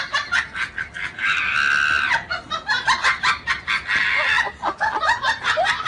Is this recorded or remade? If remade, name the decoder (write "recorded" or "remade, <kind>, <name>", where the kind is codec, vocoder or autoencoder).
recorded